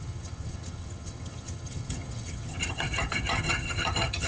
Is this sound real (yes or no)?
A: no